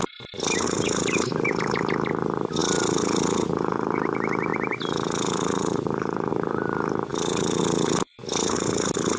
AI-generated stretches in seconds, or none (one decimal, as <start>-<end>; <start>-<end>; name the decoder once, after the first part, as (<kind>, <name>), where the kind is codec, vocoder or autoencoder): 4.5-6.3 (vocoder, BigVGAN v2); 7.1-7.6